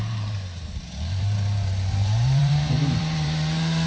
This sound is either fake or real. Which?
fake